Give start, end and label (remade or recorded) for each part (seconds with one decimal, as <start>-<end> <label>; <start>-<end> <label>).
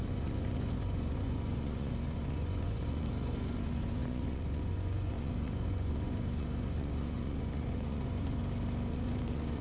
0.0-8.4 remade; 8.4-8.9 recorded; 8.9-9.6 remade